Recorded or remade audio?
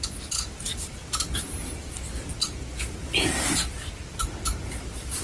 recorded